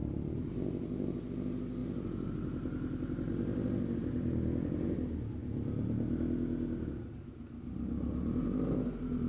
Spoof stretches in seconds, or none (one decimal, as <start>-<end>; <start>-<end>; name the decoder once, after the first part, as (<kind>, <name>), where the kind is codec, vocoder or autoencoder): 0.0-1.3 (vocoder, BigVGAN v2); 1.8-2.3